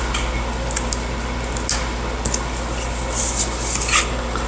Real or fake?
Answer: real